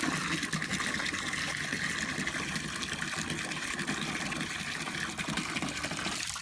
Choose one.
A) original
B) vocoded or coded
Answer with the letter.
A